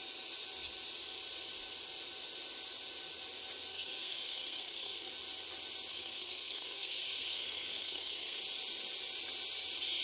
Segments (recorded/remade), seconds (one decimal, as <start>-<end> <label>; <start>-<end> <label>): 0.0-3.7 recorded; 3.7-5.1 remade; 5.1-5.9 recorded; 5.9-8.4 remade; 8.4-10.0 recorded